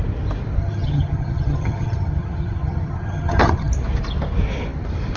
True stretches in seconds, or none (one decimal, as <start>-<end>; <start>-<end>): 0.0-0.6; 3.7-5.2